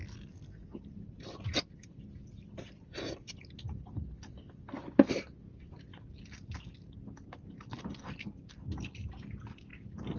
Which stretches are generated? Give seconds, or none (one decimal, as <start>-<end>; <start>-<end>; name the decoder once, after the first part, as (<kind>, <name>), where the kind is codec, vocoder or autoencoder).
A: 0.0-3.3 (vocoder, BigVGAN v2); 9.7-10.2